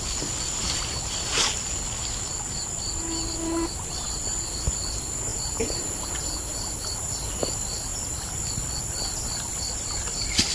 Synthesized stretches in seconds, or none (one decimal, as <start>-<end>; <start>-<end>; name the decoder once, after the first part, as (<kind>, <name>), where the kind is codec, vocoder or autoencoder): 5.3-6.7 (vocoder, BigVGAN v2)